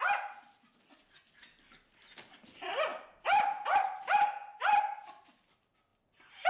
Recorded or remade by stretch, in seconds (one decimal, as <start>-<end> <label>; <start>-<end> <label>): 0.0-6.5 recorded